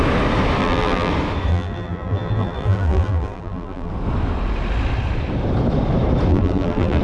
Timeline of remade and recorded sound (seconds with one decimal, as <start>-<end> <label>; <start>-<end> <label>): 0.0-0.6 recorded; 0.6-1.1 remade; 1.1-1.5 recorded; 1.5-3.9 remade; 3.9-6.3 recorded; 6.3-7.0 remade